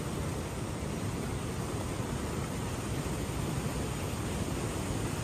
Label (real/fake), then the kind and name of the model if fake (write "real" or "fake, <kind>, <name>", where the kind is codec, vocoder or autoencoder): fake, vocoder, BigVGAN v2